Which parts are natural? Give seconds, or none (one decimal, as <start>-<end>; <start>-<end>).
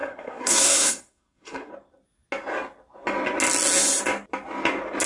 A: 1.7-5.1